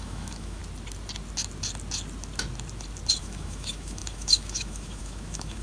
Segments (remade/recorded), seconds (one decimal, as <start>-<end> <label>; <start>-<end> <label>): 0.0-0.6 remade; 0.6-3.2 recorded; 3.2-5.6 remade